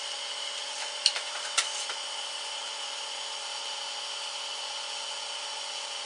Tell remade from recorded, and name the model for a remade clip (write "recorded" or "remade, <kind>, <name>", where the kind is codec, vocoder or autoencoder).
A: recorded